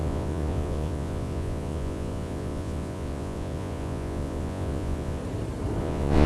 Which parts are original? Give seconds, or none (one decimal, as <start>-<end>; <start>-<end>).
5.2-5.8